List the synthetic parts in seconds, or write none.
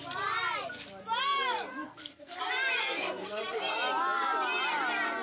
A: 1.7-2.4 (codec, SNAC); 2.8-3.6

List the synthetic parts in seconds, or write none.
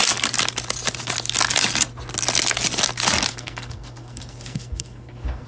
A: 3.3-5.5 (codec, SNAC)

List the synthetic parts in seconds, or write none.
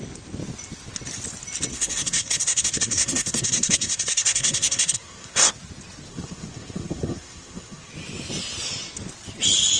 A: 1.7-5.5 (codec, SNAC); 6.1-7.9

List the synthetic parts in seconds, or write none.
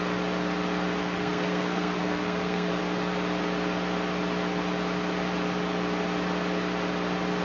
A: 1.0-2.7 (codec, SNAC)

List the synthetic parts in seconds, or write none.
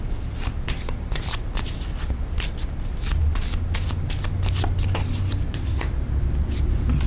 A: none